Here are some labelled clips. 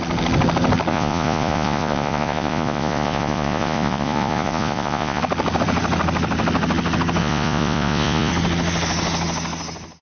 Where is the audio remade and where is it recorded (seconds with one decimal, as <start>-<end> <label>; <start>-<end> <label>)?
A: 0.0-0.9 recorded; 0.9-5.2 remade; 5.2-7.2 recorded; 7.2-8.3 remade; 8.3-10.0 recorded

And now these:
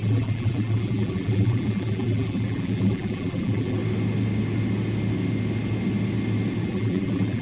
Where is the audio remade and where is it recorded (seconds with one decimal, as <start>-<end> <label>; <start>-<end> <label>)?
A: 0.0-3.8 remade; 3.8-6.6 recorded; 6.6-7.4 remade

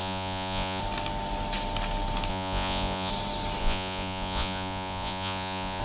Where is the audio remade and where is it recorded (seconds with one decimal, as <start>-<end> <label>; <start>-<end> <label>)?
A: 0.0-0.8 remade; 0.8-2.3 recorded; 2.3-3.1 remade; 3.1-3.6 recorded; 3.6-5.8 remade